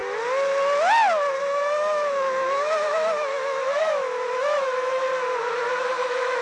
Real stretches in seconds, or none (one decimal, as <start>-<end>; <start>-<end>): 0.0-1.4; 5.1-5.8